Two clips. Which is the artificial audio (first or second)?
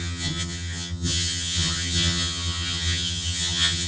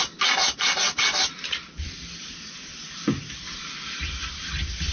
first